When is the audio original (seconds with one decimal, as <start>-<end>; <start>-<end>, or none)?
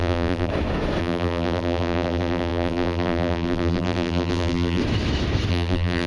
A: 0.5-1.0; 4.8-5.5